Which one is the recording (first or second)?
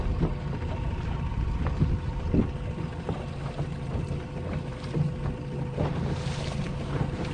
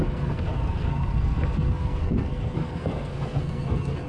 first